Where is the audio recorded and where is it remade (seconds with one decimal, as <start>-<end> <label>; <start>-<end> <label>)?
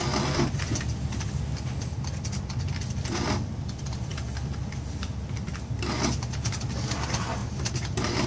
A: 0.0-7.4 recorded; 7.4-8.3 remade